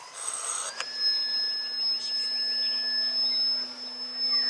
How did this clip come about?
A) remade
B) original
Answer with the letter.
B